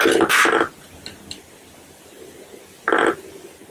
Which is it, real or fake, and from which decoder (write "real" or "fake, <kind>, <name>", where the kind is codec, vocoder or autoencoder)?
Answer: real